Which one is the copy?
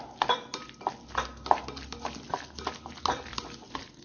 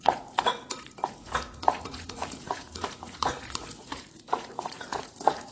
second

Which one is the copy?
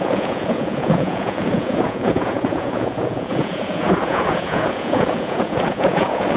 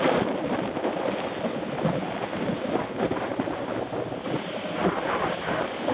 first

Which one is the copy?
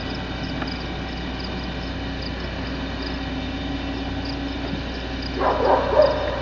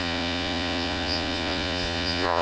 second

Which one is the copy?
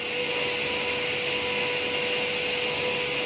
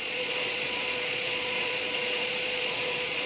second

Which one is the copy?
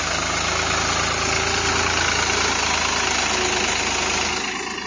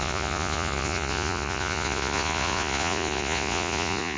second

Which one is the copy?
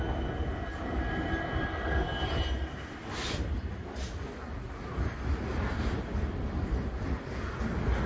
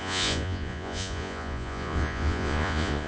second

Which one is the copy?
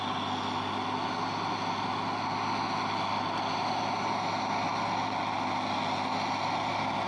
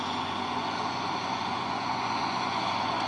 second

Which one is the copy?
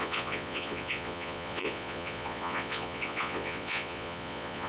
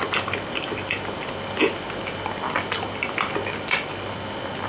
first